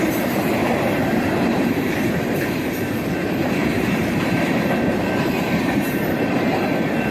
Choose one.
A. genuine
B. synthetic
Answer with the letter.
B